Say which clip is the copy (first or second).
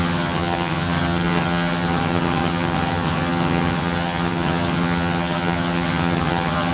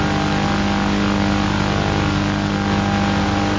first